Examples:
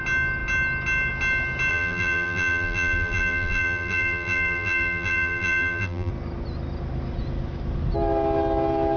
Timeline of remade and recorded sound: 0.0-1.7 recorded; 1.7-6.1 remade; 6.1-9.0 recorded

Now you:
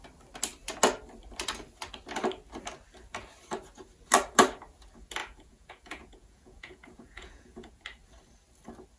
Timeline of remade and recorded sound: 0.0-5.2 recorded; 5.2-7.8 remade; 7.8-9.0 recorded

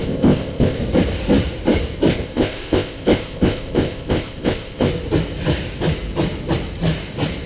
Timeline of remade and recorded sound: 0.0-0.8 remade; 0.8-2.1 recorded; 2.1-4.9 remade; 4.9-7.5 recorded

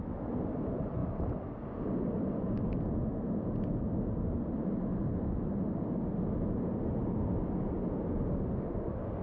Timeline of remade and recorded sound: 0.0-9.2 recorded

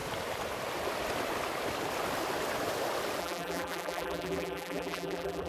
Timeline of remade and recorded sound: 0.0-3.2 recorded; 3.2-5.5 remade

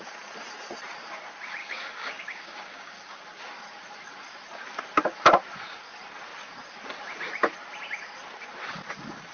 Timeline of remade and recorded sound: 0.0-1.6 recorded; 1.6-3.2 remade; 3.2-9.3 recorded

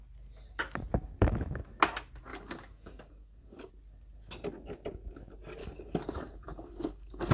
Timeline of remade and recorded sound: 0.0-2.3 recorded; 2.3-3.7 remade; 3.7-5.6 recorded; 5.6-7.3 remade